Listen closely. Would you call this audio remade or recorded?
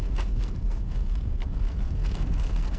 remade